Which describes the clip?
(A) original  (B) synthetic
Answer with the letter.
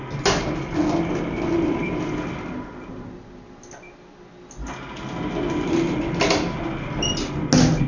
A